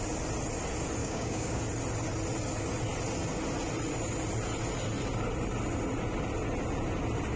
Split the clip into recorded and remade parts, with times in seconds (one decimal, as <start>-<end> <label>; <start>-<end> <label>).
0.0-1.0 recorded; 1.0-1.6 remade; 1.6-7.4 recorded